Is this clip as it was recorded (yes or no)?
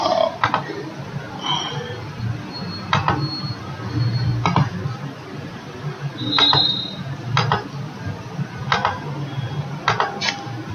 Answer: yes